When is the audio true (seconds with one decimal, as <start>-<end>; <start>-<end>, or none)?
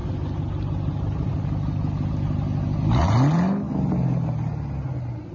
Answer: 0.0-5.3